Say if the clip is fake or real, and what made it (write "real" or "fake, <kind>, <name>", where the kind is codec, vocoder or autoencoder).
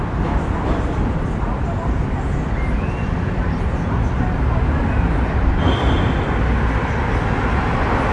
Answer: real